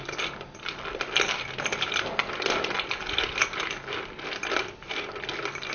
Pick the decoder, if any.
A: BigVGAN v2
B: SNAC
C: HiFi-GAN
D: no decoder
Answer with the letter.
D